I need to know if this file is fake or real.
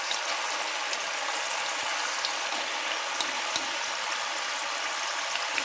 real